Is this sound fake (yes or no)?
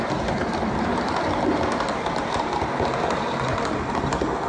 yes